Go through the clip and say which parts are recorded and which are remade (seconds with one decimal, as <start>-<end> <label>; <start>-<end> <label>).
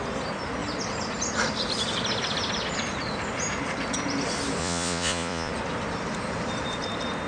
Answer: 0.0-4.6 recorded; 4.6-5.5 remade; 5.5-7.3 recorded